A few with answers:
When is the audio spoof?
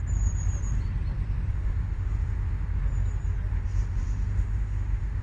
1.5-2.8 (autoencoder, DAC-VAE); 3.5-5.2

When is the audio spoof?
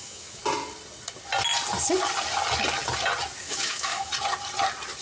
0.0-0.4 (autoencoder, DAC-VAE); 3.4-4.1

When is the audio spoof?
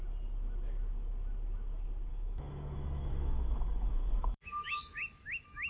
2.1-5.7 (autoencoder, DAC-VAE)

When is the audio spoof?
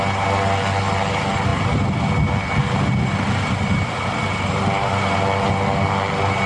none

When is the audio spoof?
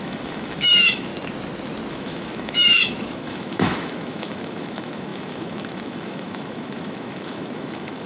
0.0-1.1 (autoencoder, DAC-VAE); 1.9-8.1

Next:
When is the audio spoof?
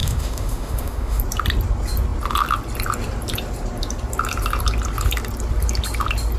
0.0-1.2 (autoencoder, DAC-VAE)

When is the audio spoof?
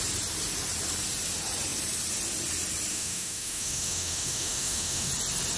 2.9-5.1 (autoencoder, DAC-VAE)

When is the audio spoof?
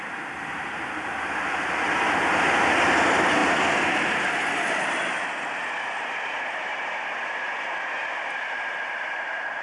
none